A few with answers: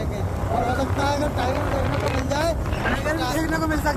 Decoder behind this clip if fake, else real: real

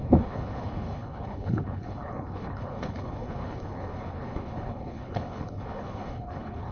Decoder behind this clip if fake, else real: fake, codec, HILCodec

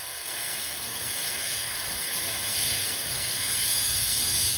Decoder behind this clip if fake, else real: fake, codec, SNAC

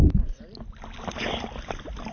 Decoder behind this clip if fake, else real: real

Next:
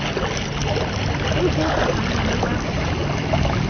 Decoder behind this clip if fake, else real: real